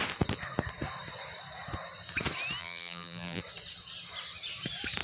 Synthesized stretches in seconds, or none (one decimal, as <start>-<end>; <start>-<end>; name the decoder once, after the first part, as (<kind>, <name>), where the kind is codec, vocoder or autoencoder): 2.6-3.4 (vocoder, BigVGAN v2)